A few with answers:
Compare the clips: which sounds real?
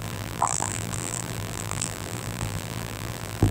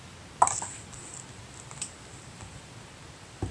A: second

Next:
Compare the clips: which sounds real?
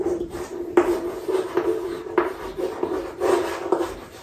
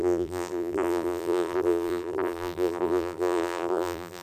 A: first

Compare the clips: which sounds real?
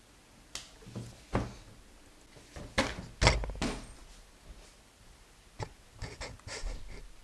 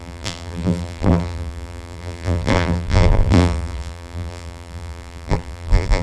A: first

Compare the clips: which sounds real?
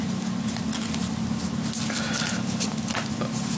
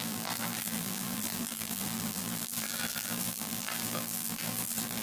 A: first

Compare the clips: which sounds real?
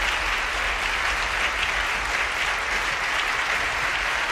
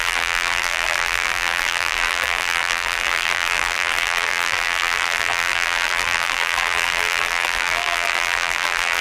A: first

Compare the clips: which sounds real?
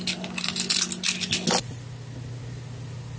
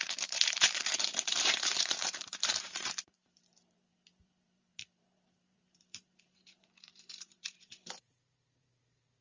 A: first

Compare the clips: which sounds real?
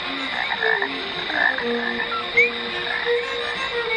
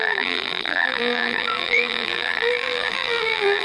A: first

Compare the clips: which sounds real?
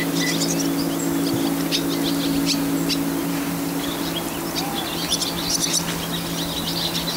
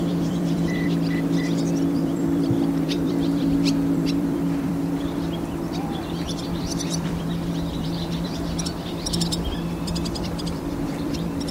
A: first